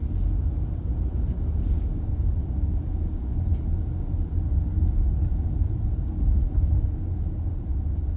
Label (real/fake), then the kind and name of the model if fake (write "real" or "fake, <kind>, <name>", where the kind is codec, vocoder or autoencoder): real